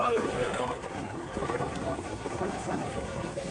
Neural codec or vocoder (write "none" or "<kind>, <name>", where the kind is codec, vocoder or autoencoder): codec, SNAC